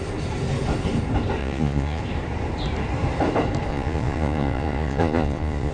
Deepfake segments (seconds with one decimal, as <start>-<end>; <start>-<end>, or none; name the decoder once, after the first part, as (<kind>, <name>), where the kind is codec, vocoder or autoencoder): 1.4-2.0 (vocoder, Vocos); 3.7-5.7